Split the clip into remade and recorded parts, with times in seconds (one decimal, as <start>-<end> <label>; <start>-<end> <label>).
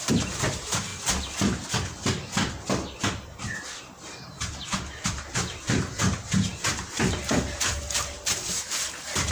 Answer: 0.0-0.9 remade; 0.9-3.8 recorded; 3.8-9.3 remade